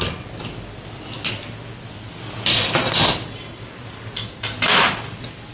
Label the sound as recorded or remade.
recorded